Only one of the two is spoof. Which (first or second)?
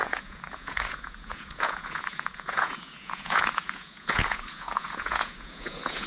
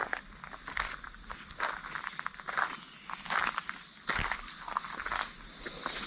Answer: first